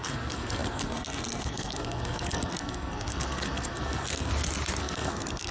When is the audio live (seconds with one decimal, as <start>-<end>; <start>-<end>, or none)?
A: 4.3-4.8

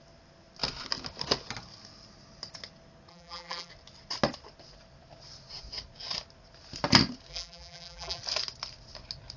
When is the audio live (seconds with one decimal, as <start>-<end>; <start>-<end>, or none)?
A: 0.0-3.1; 3.7-7.3; 8.2-9.4

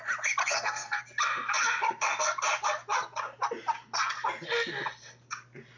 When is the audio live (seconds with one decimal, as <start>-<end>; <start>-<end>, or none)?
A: 0.0-0.4; 1.0-5.8

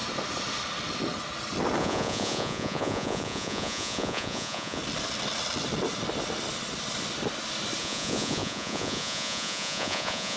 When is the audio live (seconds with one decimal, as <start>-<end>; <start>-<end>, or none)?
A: 0.0-1.8; 4.8-7.8

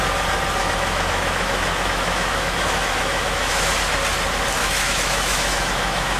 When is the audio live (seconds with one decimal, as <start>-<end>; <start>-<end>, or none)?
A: 0.0-0.6; 3.7-4.6

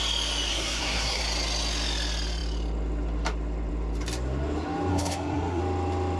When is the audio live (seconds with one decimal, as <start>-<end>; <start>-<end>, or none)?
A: 0.0-0.5; 1.2-4.9; 5.6-6.2